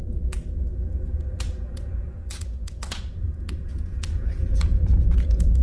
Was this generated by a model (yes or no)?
yes